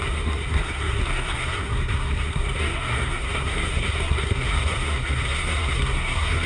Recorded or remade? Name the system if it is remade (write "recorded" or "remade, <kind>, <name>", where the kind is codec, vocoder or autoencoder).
remade, codec, SNAC